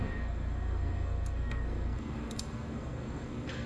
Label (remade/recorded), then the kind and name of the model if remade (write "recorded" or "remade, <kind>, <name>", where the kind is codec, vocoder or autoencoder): remade, codec, SNAC